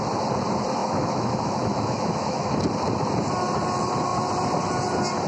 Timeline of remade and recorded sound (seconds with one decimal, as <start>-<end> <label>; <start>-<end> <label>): 0.0-0.8 recorded; 0.8-2.6 remade; 2.6-5.3 recorded